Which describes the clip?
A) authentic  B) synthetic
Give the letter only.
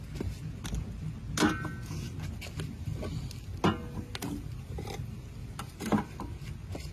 A